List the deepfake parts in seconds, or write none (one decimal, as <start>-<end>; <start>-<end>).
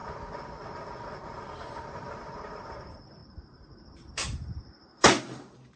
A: 1.3-5.8